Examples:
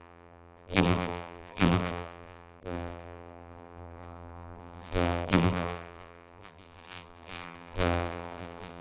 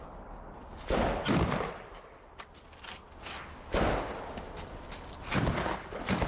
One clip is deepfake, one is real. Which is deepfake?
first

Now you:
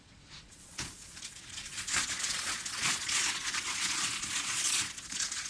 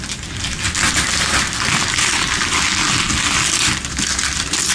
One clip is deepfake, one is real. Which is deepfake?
first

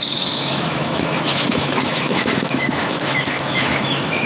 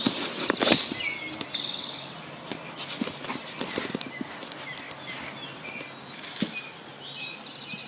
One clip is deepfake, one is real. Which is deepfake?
first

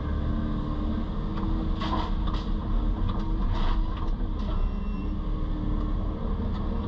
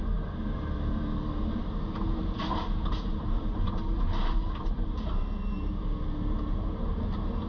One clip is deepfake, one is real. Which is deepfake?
second